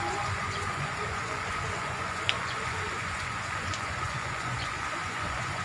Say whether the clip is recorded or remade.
remade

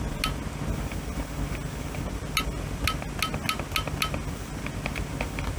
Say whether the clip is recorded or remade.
recorded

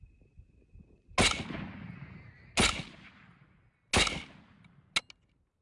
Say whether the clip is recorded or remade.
recorded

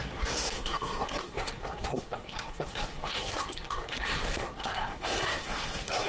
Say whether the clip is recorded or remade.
remade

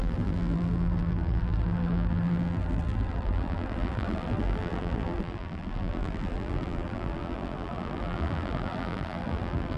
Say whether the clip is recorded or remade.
remade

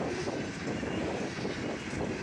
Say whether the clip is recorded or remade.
recorded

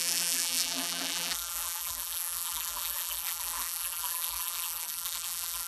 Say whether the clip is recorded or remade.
remade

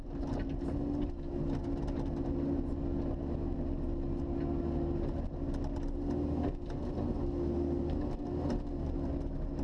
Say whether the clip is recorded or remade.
recorded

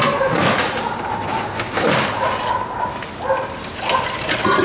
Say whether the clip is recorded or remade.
recorded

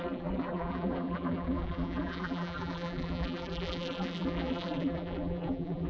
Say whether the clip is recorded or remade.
remade